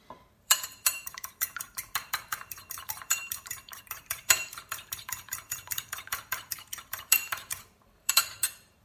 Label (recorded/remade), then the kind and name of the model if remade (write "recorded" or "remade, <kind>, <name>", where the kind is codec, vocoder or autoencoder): remade, vocoder, BigVGAN v2